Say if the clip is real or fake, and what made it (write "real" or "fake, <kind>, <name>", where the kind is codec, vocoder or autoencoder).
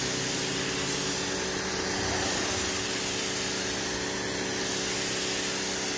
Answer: real